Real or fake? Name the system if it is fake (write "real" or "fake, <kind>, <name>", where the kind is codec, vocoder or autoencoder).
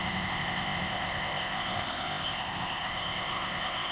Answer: fake, codec, ZipCodec